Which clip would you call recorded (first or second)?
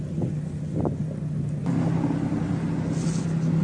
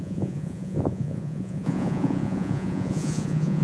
first